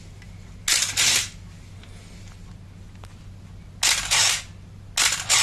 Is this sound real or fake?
real